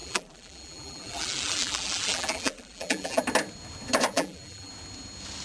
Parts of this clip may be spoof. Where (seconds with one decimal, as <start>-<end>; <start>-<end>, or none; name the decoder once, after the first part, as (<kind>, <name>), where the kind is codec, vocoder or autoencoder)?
0.0-3.2 (vocoder, BigVGAN v2); 4.1-4.7